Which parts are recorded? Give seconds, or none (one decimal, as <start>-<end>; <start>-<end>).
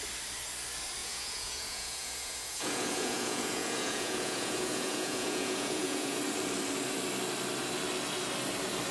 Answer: 0.0-1.0; 6.2-8.9